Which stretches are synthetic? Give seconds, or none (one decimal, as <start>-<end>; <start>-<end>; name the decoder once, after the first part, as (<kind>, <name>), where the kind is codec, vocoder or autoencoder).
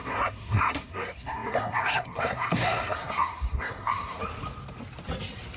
0.0-4.2 (codec, SNAC)